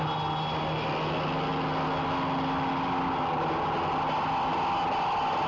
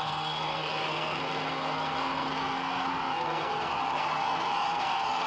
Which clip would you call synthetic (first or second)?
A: second